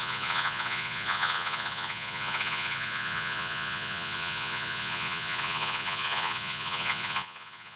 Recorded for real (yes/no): no